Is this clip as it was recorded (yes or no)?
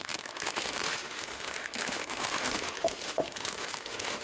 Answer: no